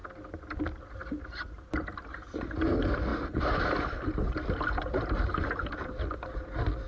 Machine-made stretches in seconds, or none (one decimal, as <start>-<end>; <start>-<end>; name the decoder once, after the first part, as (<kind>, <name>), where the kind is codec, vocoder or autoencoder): none